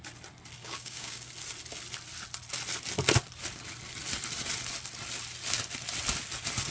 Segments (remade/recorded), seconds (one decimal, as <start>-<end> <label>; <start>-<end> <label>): 0.0-0.6 recorded; 0.6-1.3 remade; 1.3-6.7 recorded